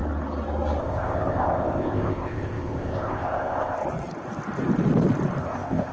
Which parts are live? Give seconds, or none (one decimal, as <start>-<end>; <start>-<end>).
0.0-0.8; 3.8-5.4